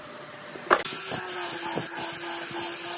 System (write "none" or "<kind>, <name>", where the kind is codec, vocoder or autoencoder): none